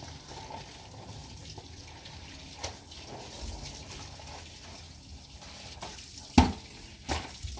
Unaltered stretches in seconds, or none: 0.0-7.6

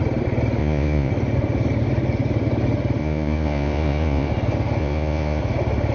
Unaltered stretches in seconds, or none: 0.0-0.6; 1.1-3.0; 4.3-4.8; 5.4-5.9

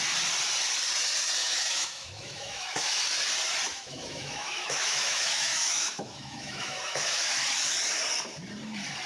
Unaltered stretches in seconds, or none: 0.0-1.4; 3.0-3.7; 7.4-9.1